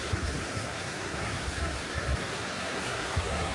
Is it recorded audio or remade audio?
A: remade